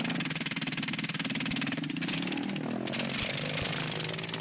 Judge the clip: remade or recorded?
recorded